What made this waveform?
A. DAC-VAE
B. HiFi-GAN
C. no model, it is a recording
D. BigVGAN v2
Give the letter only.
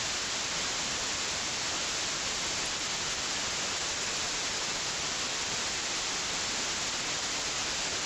D